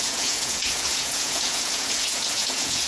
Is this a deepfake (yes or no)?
yes